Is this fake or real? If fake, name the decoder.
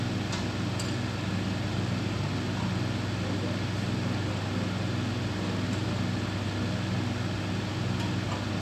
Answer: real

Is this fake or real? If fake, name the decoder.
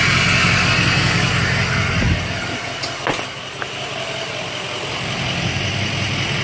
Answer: real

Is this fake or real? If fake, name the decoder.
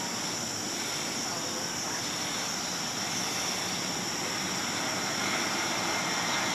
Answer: real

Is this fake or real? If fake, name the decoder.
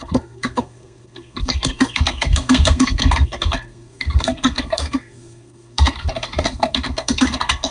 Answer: fake, codec, SNAC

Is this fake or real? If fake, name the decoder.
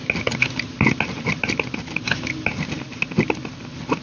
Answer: real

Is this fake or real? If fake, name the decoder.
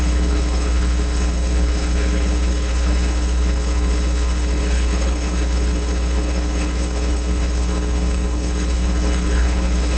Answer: fake, codec, HILCodec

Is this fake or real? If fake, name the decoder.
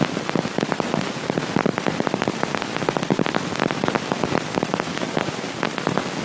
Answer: real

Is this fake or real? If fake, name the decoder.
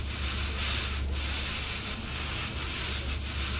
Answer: real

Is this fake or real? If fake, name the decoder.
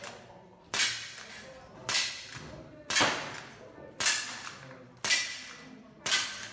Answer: real